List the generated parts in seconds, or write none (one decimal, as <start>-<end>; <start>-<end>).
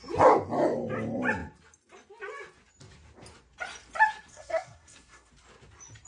4.3-5.3